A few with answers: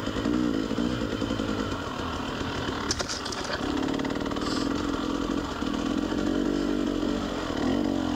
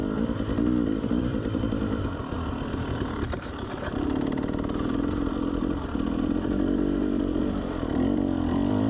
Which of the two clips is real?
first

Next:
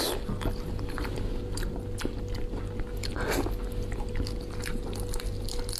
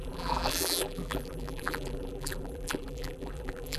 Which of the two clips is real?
first